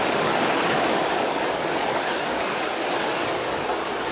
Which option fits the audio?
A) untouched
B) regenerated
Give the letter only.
B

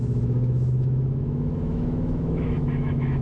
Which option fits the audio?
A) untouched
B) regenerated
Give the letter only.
B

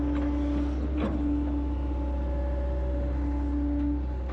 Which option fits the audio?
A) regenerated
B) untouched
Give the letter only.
B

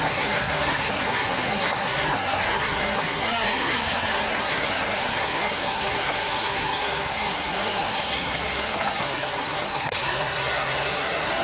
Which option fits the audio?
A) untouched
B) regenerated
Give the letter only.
B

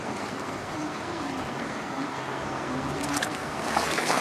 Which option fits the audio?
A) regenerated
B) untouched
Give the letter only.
A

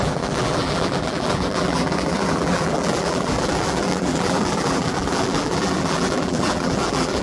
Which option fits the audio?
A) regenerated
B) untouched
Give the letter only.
A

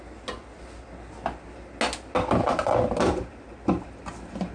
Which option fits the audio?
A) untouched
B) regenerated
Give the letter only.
A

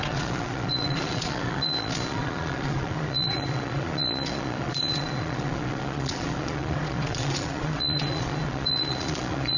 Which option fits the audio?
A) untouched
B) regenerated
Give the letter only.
B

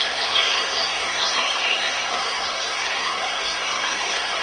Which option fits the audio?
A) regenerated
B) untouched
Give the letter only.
A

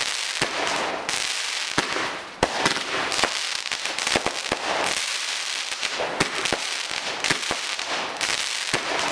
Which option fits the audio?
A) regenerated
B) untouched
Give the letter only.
B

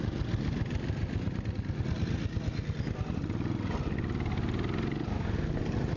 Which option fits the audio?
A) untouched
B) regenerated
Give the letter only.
A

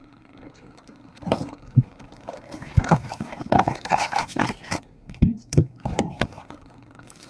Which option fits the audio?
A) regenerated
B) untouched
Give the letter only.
A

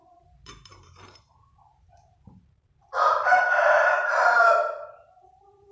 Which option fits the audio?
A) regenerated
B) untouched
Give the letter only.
A